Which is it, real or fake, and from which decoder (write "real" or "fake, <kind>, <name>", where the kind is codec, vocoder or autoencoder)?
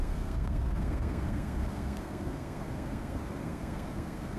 fake, codec, SNAC